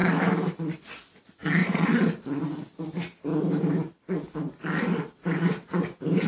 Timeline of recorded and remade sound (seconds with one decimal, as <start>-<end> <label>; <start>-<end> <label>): 0.0-0.6 remade; 0.6-6.3 recorded